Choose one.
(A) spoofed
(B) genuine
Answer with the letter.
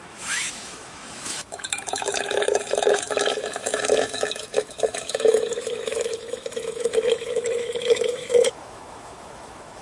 A